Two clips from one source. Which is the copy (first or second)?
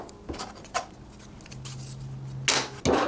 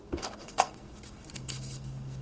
second